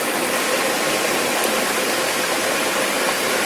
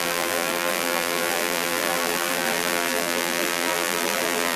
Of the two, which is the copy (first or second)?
second